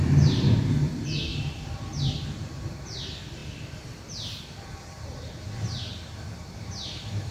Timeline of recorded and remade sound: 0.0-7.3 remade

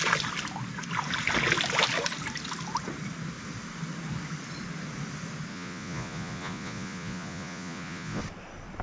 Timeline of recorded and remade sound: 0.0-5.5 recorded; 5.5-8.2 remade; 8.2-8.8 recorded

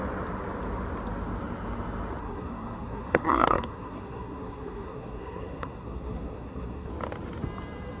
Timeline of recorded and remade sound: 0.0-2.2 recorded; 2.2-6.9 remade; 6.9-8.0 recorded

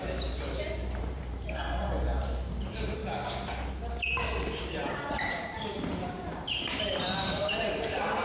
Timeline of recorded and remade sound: 0.0-3.0 remade; 3.0-5.1 recorded; 5.1-8.2 remade